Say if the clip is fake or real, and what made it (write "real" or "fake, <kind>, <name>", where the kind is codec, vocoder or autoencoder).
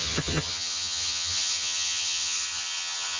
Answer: fake, vocoder, HiFi-GAN